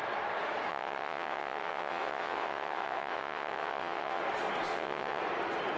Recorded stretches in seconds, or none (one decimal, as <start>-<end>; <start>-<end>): 0.0-0.7; 4.2-4.7; 5.2-5.8